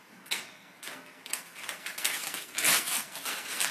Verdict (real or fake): fake